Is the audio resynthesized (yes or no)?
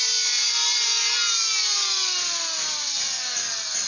no